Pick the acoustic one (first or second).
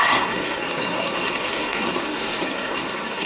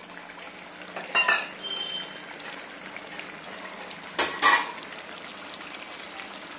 second